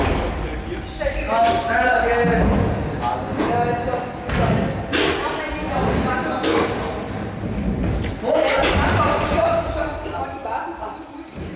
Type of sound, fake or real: real